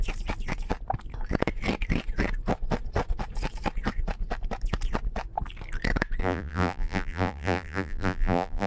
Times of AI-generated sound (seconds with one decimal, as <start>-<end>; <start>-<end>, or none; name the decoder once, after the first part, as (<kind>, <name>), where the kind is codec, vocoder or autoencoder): 6.2-8.7 (vocoder, BigVGAN v2)